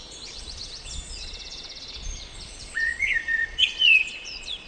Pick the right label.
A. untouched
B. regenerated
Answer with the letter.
B